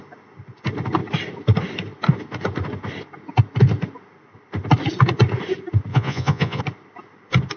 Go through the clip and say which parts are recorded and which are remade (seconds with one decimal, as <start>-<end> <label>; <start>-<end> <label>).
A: 0.0-5.9 recorded; 5.9-6.6 remade; 6.6-7.6 recorded